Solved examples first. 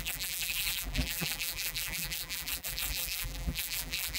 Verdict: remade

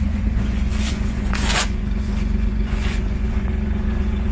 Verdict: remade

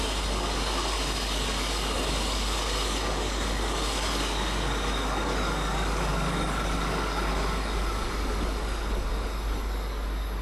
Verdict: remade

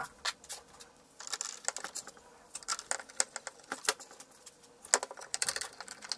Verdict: recorded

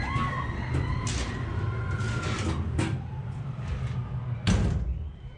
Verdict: recorded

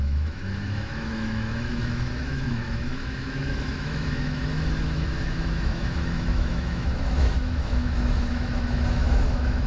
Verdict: remade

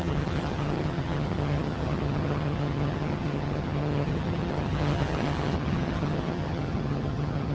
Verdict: remade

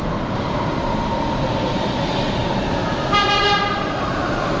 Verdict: recorded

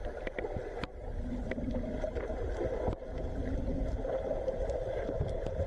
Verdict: recorded